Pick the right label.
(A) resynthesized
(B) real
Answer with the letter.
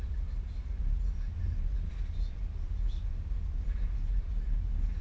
B